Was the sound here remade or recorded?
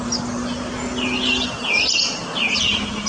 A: recorded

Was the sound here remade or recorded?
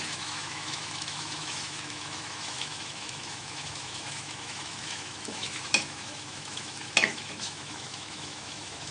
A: remade